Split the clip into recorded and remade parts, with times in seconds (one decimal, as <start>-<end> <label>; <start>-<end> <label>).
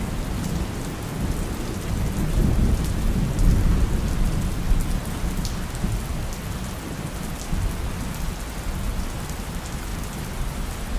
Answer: 0.0-9.9 recorded; 9.9-11.0 remade